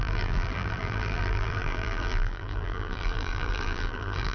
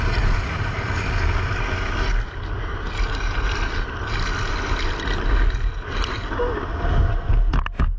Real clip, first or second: second